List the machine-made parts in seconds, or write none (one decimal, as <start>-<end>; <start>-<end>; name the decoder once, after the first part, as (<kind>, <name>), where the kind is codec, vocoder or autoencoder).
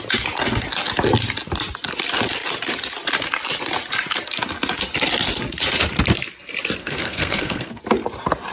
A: 6.8-7.8 (codec, SNAC)